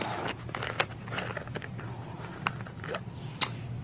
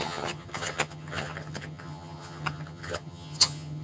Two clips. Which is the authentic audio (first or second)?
first